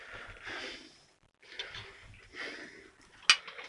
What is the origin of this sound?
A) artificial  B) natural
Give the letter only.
B